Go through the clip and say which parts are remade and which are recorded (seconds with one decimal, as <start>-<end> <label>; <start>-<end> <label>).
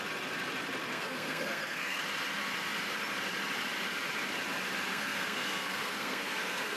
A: 0.0-0.9 recorded; 0.9-2.0 remade; 2.0-4.9 recorded; 4.9-6.8 remade